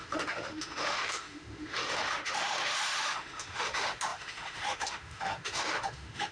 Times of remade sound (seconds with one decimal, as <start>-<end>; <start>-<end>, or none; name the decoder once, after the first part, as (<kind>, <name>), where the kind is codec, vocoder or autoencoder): 0.0-6.3 (autoencoder, DAC-VAE)